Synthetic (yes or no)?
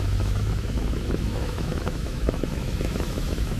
yes